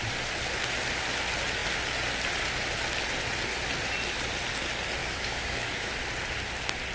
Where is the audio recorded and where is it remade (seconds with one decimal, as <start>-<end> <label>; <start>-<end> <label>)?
0.0-5.0 recorded; 5.0-5.9 remade; 5.9-6.9 recorded